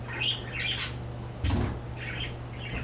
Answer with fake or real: real